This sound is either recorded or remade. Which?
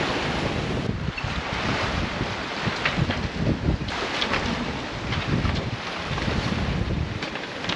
remade